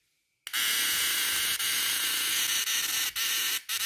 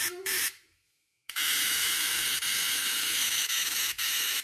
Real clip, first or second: first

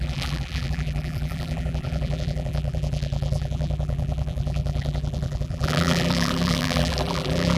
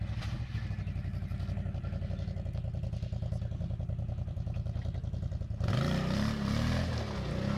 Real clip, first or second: second